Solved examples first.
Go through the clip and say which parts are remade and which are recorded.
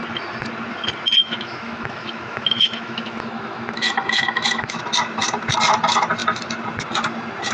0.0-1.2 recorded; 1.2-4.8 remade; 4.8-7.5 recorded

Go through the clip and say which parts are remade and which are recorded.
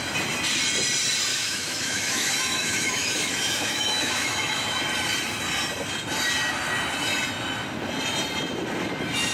0.0-1.3 recorded; 1.3-4.8 remade; 4.8-9.3 recorded